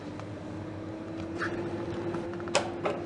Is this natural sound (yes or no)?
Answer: yes